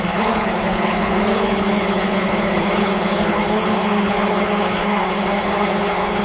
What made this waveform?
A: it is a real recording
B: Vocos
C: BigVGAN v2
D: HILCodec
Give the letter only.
D